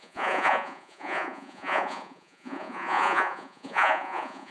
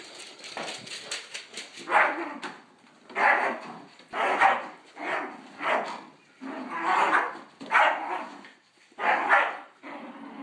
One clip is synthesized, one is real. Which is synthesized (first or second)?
first